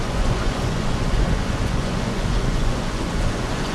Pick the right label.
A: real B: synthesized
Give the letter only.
B